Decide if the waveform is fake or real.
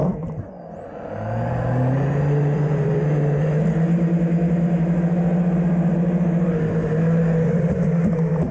real